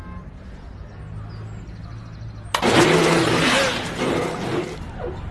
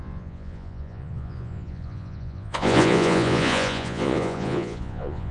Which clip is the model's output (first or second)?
second